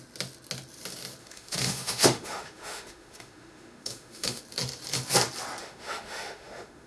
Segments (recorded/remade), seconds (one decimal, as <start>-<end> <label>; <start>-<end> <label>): 0.0-1.2 recorded; 1.2-4.4 remade; 4.4-5.6 recorded; 5.6-6.9 remade